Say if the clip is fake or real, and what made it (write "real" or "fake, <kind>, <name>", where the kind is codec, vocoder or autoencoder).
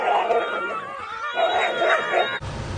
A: real